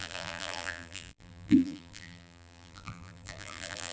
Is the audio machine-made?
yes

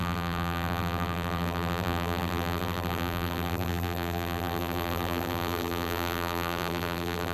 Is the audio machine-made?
yes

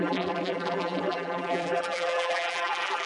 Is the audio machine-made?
yes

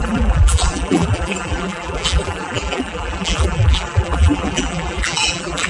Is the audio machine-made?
yes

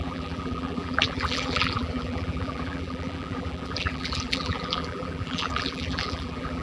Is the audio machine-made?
yes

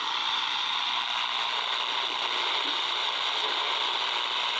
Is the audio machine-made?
yes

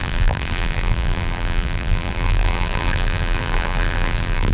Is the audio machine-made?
yes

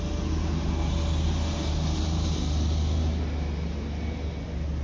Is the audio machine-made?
no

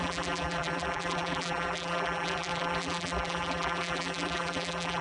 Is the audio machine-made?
yes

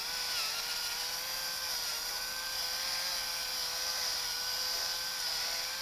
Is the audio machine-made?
no